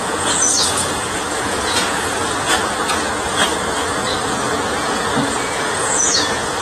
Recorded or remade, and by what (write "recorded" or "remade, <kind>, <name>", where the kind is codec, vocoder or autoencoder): remade, vocoder, Vocos